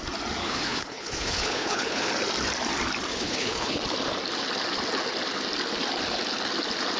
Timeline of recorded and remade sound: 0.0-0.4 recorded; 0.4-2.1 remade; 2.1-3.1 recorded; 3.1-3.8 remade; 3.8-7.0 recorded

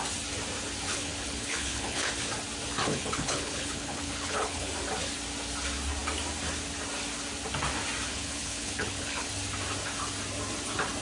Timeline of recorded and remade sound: 0.0-0.9 recorded; 0.9-2.1 remade; 2.1-2.9 recorded; 2.9-4.7 remade; 4.7-8.1 recorded; 8.1-9.3 remade; 9.3-11.0 recorded

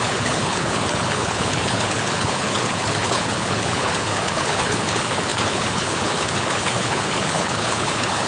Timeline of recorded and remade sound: 0.0-8.3 remade

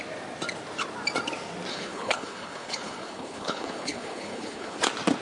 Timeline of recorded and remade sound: 0.0-1.7 recorded; 1.7-4.8 remade; 4.8-5.2 recorded

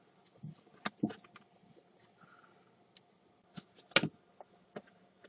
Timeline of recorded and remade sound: 0.0-5.3 recorded

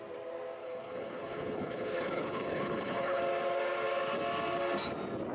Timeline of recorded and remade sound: 0.0-0.6 recorded; 0.6-3.2 remade; 3.2-5.3 recorded